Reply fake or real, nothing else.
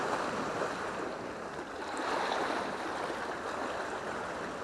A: real